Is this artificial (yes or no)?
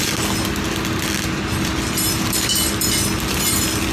no